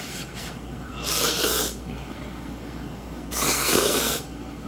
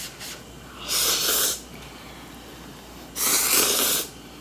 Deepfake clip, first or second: first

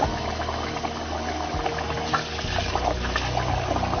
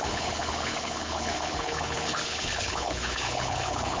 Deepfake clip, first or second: second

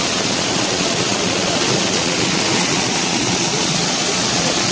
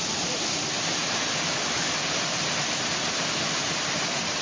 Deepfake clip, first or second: first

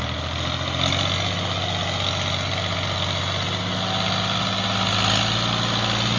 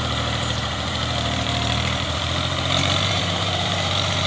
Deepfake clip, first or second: second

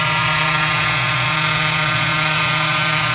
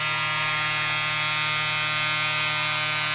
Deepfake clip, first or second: first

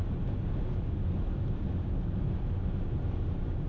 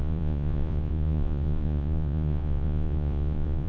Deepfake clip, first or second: second